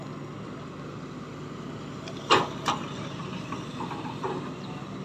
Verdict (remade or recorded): recorded